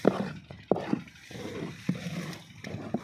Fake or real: real